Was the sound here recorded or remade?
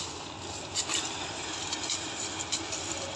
recorded